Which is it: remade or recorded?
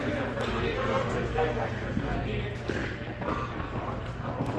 remade